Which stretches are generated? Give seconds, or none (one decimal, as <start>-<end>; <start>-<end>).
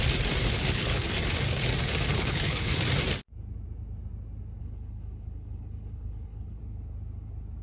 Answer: 0.4-1.1; 2.1-2.8; 4.6-6.6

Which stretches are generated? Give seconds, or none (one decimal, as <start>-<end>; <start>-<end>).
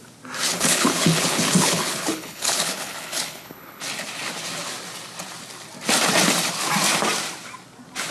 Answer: 0.5-3.8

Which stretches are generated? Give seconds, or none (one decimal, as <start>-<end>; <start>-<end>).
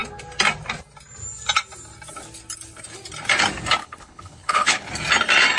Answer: 3.8-4.9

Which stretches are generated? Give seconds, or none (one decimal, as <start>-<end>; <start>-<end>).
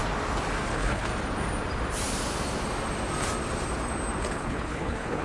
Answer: 0.7-1.1; 4.2-5.2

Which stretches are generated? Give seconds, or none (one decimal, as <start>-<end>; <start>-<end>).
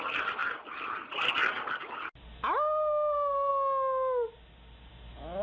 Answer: none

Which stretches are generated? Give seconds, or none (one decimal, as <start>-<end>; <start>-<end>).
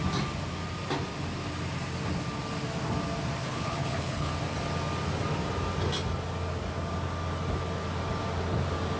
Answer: 3.4-4.3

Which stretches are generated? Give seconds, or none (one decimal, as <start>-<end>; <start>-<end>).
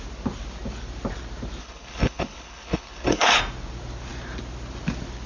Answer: 1.6-3.4